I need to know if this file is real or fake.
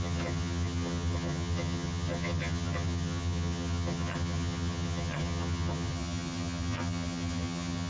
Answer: fake